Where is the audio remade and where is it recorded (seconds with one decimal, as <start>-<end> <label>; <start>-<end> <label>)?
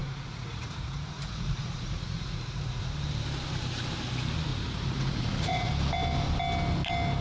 0.0-2.9 remade; 2.9-4.5 recorded; 4.5-5.7 remade; 5.7-7.2 recorded